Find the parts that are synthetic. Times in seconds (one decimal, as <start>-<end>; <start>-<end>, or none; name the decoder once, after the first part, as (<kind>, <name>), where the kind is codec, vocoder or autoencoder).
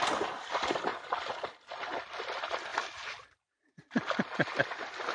none